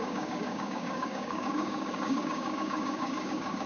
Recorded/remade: remade